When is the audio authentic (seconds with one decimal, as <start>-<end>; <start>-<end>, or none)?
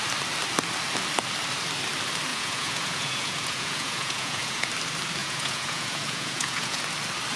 0.0-2.3; 4.7-5.2; 6.8-7.4